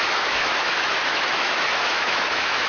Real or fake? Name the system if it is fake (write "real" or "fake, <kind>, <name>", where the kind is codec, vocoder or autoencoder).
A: fake, autoencoder, DAC-VAE